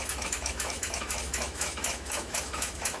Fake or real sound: fake